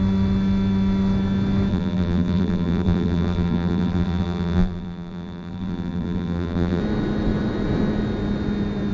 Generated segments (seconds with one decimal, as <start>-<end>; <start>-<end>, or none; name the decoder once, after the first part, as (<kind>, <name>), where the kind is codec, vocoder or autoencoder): 1.7-6.8 (vocoder, BigVGAN v2)